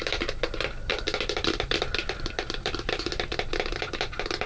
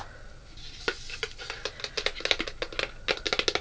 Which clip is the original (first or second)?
second